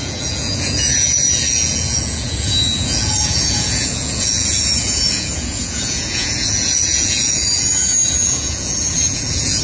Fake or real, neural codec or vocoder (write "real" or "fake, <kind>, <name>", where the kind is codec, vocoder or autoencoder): fake, vocoder, Vocos